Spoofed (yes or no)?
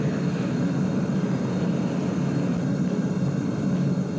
no